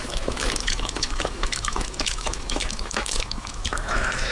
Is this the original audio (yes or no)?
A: no